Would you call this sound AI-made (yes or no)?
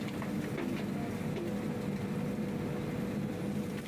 no